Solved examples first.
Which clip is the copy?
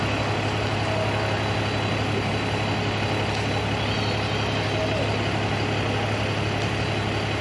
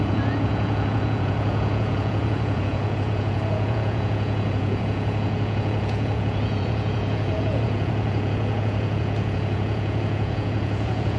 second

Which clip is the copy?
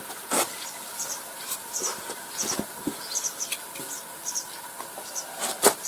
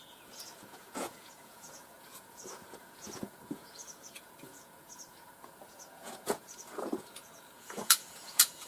second